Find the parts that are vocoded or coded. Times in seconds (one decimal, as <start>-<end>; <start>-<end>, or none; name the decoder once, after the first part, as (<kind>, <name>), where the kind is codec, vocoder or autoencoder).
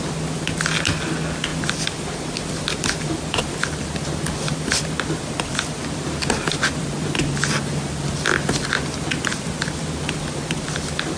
none